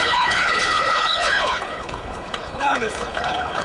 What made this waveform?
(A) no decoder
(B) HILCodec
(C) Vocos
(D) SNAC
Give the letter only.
B